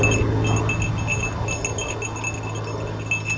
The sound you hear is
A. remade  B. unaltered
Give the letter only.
B